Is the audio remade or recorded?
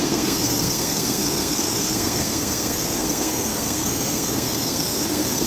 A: remade